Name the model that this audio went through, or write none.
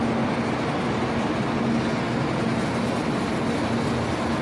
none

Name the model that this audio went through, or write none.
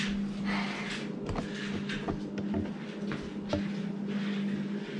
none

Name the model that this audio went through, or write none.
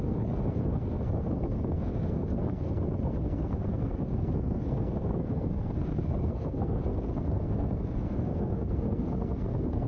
codec, SNAC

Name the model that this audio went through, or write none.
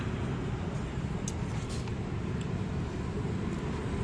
none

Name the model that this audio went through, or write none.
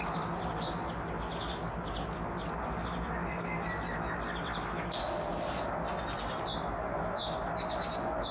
none